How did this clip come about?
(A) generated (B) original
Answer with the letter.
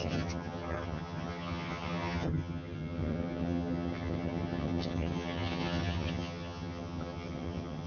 A